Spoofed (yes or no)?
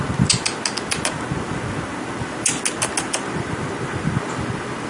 no